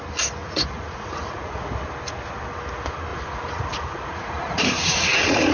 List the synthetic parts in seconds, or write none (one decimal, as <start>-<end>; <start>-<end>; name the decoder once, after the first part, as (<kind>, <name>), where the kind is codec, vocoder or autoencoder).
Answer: 0.4-1.6 (vocoder, Vocos); 3.1-5.5